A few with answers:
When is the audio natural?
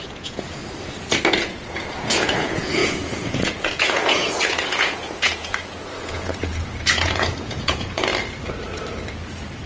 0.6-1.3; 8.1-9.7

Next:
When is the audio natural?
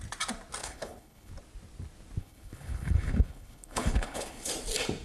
0.0-0.6; 1.3-2.2; 4.5-5.0